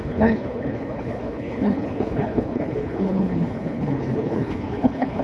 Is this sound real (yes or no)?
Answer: no